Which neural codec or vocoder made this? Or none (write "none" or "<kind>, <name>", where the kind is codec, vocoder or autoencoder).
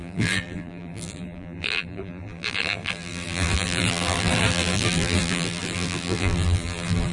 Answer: vocoder, BigVGAN v2